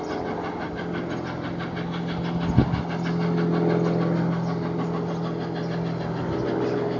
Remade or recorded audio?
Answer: recorded